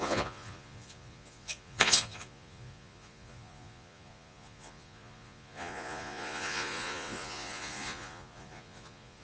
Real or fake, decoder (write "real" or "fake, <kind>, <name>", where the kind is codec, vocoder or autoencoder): fake, vocoder, Vocos